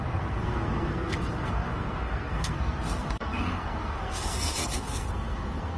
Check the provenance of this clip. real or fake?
fake